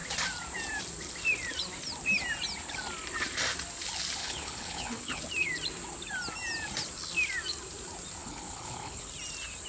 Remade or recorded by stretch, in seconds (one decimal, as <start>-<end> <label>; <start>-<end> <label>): 0.0-4.2 recorded; 4.2-5.2 remade; 5.2-8.2 recorded; 8.2-9.1 remade; 9.1-9.7 recorded